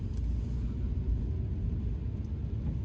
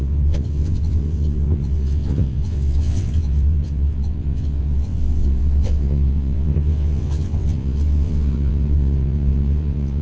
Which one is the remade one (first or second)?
second